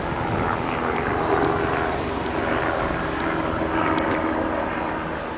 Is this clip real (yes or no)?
yes